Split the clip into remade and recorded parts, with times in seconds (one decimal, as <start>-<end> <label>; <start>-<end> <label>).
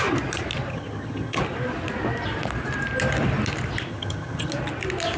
0.0-0.7 recorded; 0.7-1.4 remade; 1.4-3.9 recorded; 3.9-4.5 remade; 4.5-5.2 recorded